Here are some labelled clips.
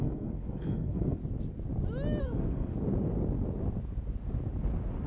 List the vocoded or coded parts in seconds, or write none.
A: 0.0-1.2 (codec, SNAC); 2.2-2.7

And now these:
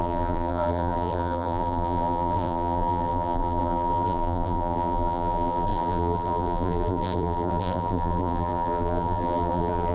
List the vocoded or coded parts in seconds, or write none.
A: 0.0-9.9 (vocoder, BigVGAN v2)

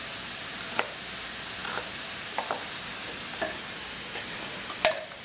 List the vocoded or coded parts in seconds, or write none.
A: none

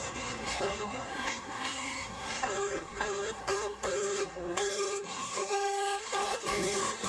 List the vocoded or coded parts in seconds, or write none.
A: 0.0-7.1 (codec, SNAC)

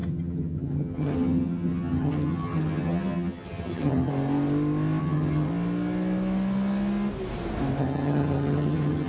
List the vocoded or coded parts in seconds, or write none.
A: 0.0-4.1 (vocoder, HiFi-GAN); 5.0-5.5; 7.8-9.1